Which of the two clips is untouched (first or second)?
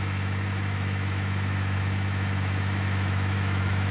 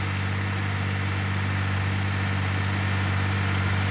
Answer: second